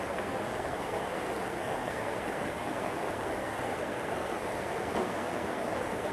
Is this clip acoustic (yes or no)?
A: no